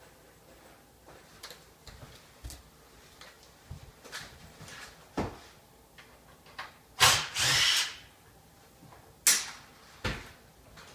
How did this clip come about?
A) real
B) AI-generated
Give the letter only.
A